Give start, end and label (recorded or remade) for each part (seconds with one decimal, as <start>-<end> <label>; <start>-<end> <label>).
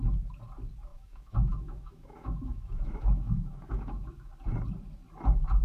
0.0-0.9 recorded; 0.9-4.3 remade; 4.3-5.6 recorded